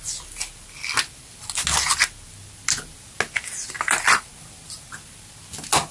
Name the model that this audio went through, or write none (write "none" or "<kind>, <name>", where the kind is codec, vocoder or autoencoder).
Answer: none